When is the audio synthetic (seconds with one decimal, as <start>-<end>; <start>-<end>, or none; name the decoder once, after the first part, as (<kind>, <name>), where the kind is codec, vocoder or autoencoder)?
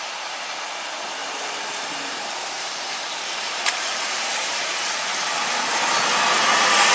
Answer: 1.2-5.3 (vocoder, BigVGAN v2)